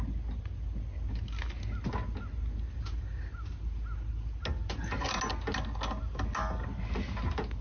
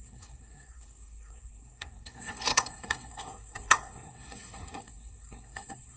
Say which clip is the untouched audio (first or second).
first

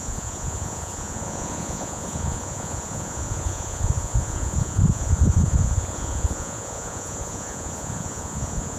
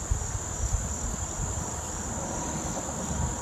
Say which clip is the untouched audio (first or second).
second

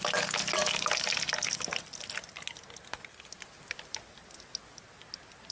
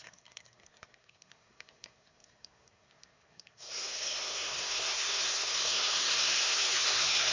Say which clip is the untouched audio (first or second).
first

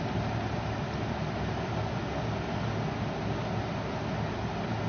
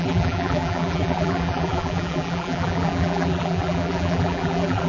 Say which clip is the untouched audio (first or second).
first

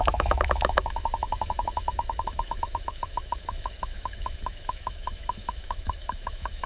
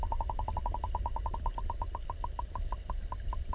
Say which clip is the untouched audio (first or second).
second